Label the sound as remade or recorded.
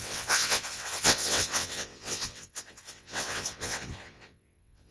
remade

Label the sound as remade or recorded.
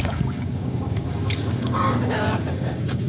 remade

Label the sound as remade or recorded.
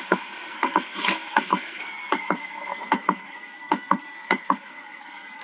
remade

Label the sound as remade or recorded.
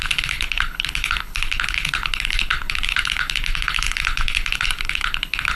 remade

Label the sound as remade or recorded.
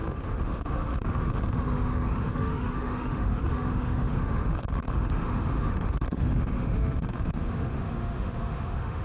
remade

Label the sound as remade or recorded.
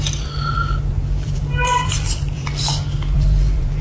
remade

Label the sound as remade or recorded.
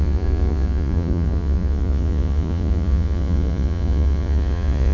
remade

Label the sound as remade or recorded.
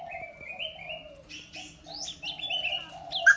recorded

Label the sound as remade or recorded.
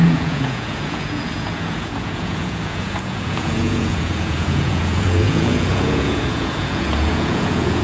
remade